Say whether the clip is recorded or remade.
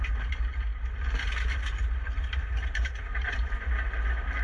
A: remade